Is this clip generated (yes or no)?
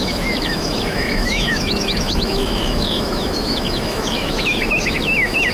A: yes